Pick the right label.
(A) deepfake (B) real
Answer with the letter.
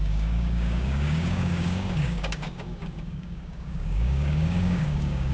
A